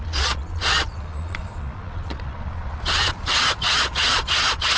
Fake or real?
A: fake